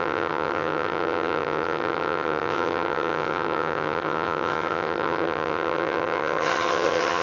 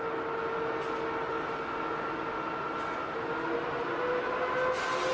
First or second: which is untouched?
second